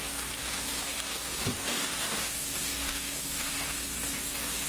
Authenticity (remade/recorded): remade